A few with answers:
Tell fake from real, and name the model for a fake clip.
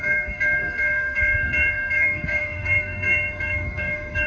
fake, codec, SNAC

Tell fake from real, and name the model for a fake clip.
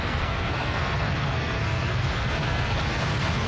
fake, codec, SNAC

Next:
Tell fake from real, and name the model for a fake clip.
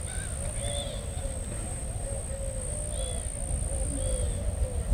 real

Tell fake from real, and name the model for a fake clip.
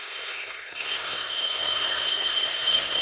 fake, codec, SNAC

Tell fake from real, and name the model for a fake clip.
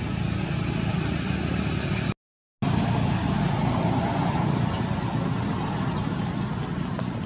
real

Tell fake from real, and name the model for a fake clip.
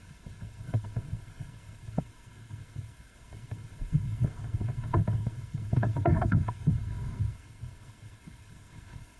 fake, codec, SNAC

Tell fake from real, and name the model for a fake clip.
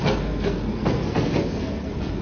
fake, codec, SNAC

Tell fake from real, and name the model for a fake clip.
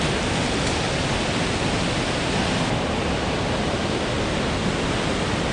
real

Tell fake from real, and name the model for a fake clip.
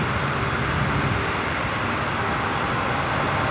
real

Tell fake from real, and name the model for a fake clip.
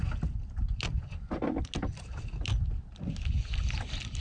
real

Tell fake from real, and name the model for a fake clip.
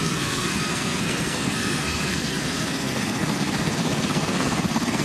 fake, codec, SNAC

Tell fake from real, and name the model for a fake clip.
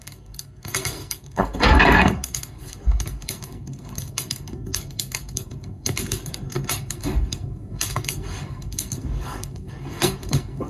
fake, codec, SNAC